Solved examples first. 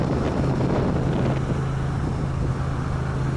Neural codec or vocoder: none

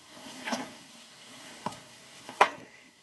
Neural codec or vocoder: codec, SNAC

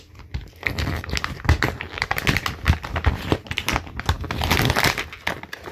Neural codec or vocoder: none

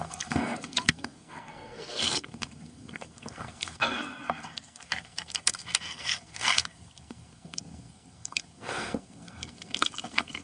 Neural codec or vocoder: codec, SNAC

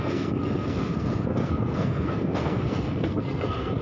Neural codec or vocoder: codec, SNAC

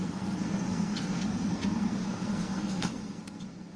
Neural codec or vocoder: codec, SNAC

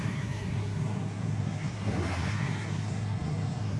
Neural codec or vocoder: codec, SNAC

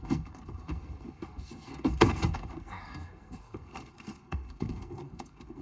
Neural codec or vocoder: codec, SNAC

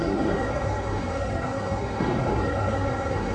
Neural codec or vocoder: codec, SNAC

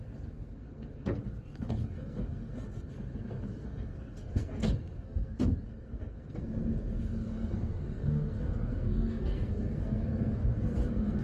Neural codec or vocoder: codec, SNAC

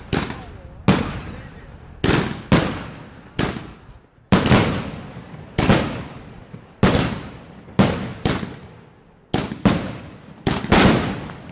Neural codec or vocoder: none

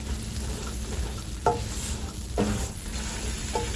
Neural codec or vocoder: none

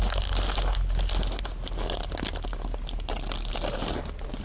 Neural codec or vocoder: none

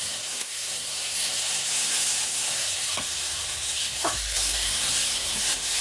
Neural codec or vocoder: codec, SNAC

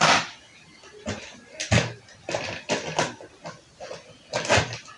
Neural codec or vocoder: none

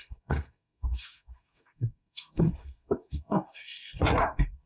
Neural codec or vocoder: codec, SNAC